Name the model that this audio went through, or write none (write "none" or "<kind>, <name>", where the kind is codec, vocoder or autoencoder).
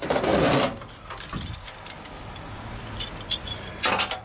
none